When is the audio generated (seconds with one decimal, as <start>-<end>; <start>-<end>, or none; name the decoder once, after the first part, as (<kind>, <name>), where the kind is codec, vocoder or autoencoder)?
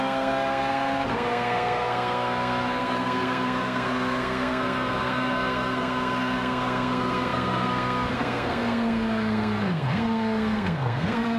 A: 0.0-11.4 (codec, SNAC)